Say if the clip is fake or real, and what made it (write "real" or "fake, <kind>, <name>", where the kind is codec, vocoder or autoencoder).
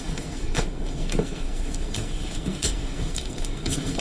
fake, codec, SNAC